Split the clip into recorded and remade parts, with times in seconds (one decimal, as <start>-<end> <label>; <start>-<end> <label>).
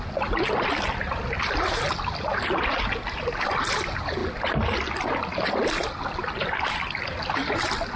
0.0-8.0 recorded